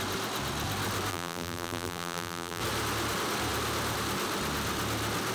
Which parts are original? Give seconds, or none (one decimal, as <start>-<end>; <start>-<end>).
0.0-1.1; 2.6-5.3